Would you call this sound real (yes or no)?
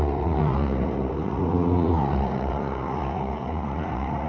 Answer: no